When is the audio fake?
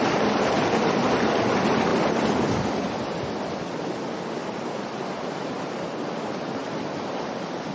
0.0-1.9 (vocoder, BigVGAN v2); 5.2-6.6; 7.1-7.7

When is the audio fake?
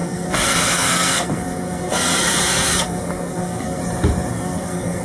0.0-3.8 (codec, SNAC); 4.3-5.0